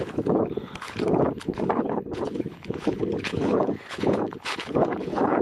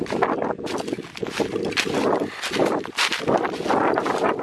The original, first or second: second